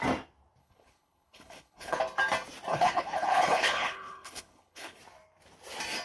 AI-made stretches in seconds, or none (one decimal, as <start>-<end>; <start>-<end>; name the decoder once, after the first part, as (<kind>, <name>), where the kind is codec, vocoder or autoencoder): 0.6-2.0 (codec, HILCodec); 2.7-5.0